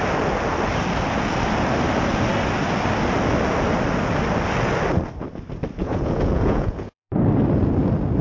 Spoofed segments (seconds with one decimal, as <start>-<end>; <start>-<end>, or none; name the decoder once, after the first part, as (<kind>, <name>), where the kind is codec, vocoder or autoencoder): 5.8-7.1 (vocoder, Vocos)